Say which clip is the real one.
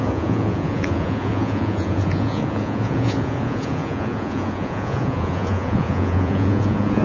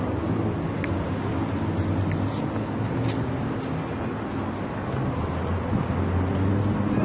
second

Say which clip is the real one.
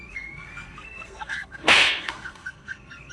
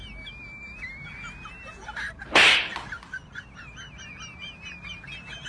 second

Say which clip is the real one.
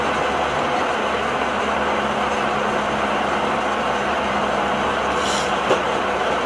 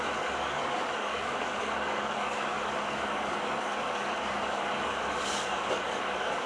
first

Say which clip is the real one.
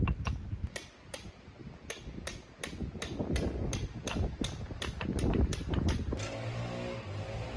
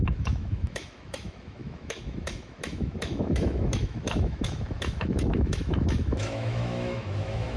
first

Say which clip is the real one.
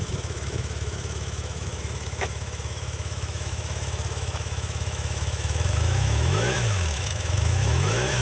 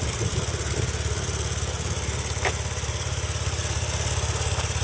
second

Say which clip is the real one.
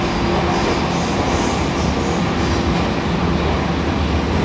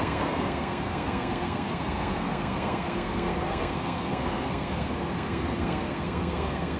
first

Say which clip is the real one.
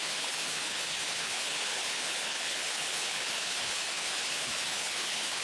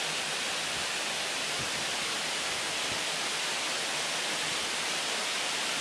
second